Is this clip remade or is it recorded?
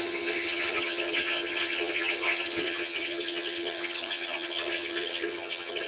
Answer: remade